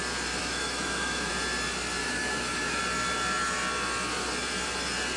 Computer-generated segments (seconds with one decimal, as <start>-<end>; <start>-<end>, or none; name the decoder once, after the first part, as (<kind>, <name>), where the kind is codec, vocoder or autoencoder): 0.4-1.3 (autoencoder, DAC-VAE); 2.0-2.8